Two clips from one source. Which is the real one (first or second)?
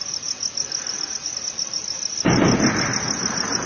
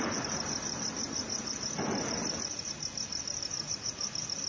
first